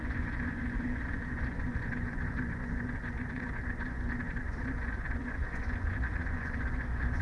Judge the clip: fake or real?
fake